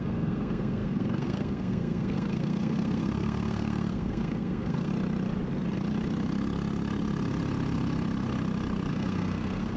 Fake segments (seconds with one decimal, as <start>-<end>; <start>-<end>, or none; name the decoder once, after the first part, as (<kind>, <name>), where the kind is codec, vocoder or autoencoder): 0.0-4.9 (codec, SNAC); 8.9-9.8